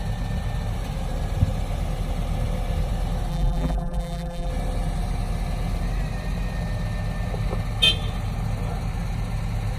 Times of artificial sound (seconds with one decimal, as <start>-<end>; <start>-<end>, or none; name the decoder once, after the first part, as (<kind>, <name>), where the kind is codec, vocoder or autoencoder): 3.3-4.5 (vocoder, BigVGAN v2)